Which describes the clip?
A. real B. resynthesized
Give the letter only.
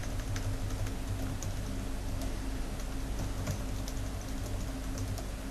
A